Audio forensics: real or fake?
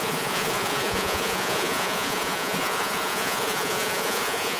fake